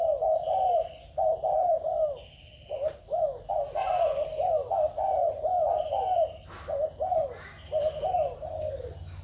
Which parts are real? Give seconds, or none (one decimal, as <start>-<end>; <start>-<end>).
0.0-9.2